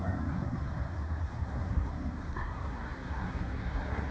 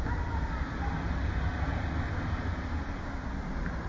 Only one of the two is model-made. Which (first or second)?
first